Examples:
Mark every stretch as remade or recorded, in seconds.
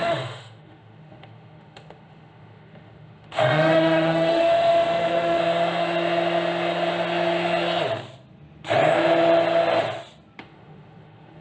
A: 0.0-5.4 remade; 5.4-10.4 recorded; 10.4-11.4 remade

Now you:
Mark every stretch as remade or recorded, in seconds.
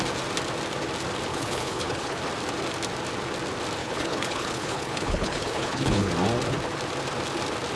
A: 0.0-1.3 recorded; 1.3-2.2 remade; 2.2-3.8 recorded; 3.8-6.1 remade; 6.1-7.8 recorded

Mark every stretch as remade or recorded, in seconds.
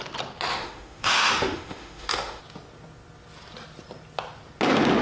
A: 0.0-0.5 recorded; 0.5-2.4 remade; 2.4-5.0 recorded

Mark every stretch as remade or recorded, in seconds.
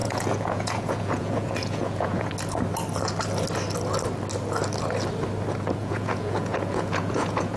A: 0.0-2.3 remade; 2.3-5.8 recorded; 5.8-7.6 remade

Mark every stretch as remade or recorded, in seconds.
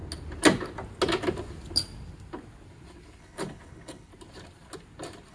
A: 0.0-3.2 recorded; 3.2-4.1 remade; 4.1-5.3 recorded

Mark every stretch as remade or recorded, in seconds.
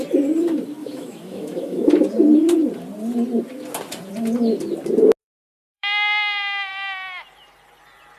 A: 0.0-0.8 recorded; 0.8-1.9 remade; 1.9-5.2 recorded; 5.2-6.7 remade; 6.7-8.2 recorded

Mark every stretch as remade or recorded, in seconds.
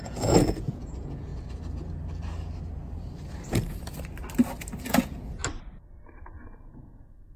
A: 0.0-1.3 remade; 1.3-4.8 recorded; 4.8-5.4 remade; 5.4-6.2 recorded; 6.2-7.4 remade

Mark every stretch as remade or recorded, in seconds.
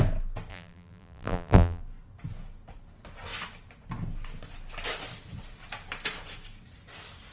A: 0.0-0.5 recorded; 0.5-1.8 remade; 1.8-7.3 recorded